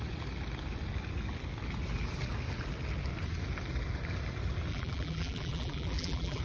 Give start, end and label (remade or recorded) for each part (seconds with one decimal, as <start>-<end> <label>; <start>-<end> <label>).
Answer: 0.0-4.7 recorded; 4.7-6.4 remade